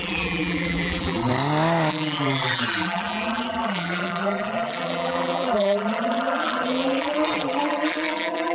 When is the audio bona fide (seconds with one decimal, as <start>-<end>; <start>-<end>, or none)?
1.3-1.9